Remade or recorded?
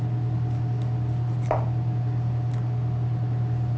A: recorded